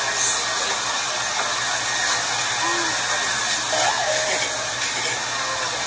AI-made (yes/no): no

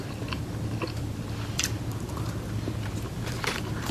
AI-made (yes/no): no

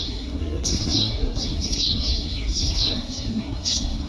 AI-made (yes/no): yes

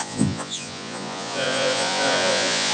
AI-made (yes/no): yes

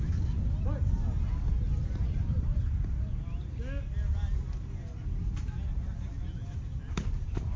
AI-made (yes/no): no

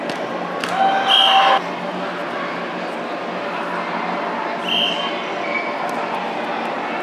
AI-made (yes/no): no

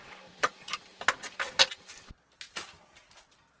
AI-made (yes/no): no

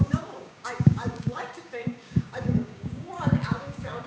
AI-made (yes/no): yes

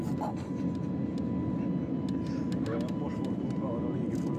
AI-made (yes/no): no